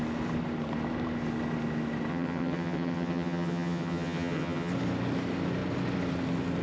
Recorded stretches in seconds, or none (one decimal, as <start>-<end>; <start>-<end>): 0.0-2.1; 4.7-6.6